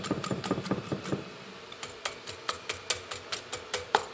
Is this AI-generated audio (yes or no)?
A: no